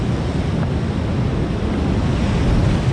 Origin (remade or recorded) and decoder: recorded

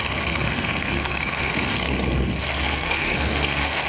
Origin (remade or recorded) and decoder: remade, codec, SNAC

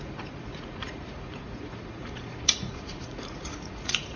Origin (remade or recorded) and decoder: remade, vocoder, Vocos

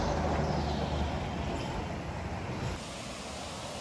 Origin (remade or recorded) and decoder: recorded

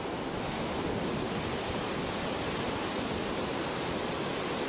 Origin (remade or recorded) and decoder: recorded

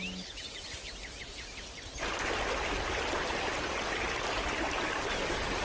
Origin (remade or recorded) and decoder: recorded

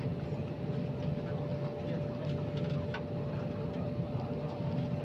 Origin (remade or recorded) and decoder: recorded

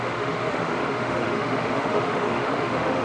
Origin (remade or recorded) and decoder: remade, autoencoder, DAC-VAE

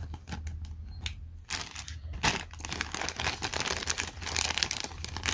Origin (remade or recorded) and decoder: recorded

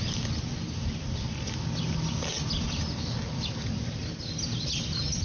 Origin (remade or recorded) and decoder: recorded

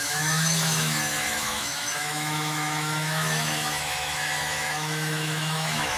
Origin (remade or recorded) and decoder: remade, autoencoder, DAC-VAE